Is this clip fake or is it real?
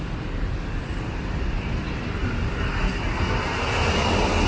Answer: real